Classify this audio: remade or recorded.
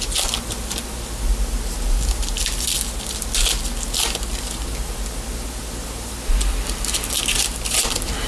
recorded